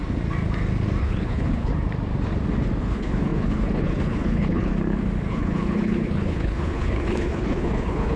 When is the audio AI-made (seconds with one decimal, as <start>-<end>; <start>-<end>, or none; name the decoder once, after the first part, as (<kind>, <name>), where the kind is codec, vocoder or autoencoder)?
1.0-1.7 (codec, HILCodec); 2.8-4.7; 5.3-8.2